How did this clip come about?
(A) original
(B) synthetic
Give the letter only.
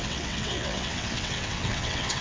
B